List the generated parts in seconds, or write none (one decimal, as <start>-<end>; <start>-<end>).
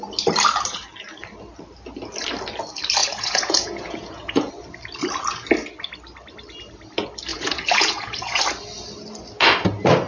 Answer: 3.0-4.5; 7.3-8.4